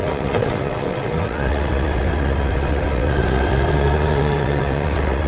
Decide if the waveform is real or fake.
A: fake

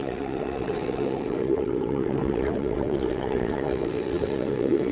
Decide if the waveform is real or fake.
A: fake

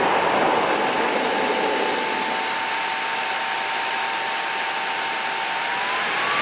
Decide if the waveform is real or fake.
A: real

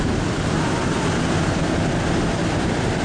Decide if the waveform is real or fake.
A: real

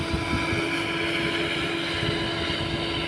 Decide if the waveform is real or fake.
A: real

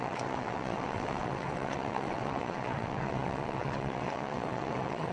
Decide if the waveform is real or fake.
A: fake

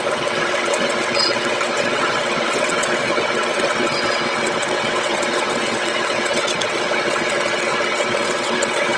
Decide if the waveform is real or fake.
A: fake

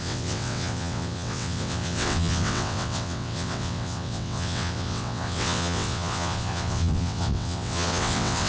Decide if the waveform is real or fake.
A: fake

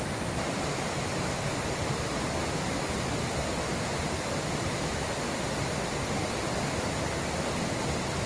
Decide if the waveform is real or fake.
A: real